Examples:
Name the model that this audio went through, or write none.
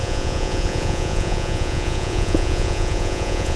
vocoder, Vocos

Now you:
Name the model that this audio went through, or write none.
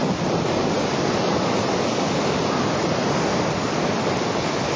none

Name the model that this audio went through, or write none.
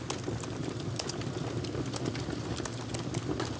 none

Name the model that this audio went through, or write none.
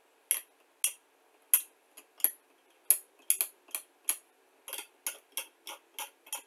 none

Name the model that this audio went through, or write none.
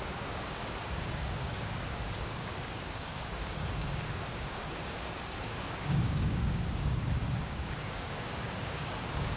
codec, DAC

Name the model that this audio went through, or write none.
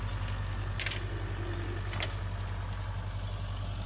none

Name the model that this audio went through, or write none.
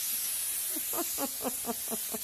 none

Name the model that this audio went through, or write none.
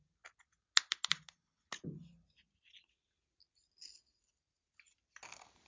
none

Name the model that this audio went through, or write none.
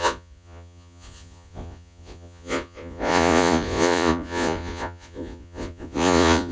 vocoder, Vocos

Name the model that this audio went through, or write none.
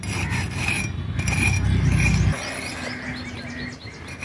none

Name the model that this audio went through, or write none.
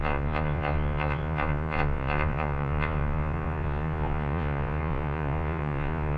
vocoder, Vocos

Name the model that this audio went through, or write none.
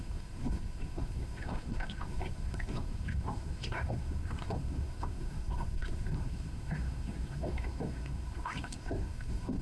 codec, SNAC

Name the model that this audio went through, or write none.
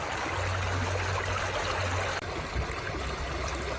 none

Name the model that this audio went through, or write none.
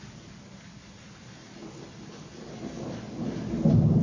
none